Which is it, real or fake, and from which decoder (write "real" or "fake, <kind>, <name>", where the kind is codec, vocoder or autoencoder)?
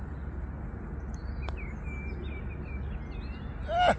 real